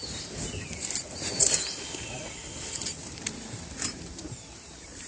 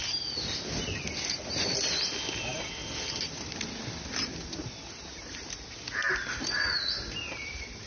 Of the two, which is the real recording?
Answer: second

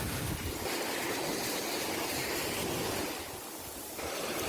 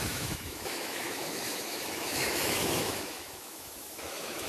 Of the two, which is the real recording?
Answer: first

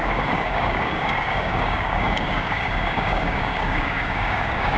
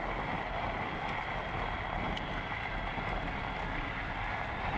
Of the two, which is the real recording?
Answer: second